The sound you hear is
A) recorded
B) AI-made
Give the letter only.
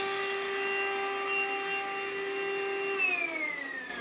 A